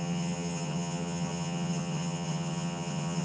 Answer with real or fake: fake